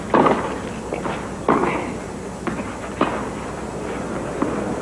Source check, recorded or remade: recorded